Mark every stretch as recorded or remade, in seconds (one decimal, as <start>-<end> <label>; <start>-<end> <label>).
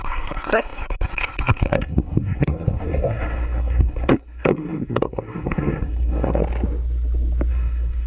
0.0-6.4 remade; 6.4-7.5 recorded; 7.5-8.1 remade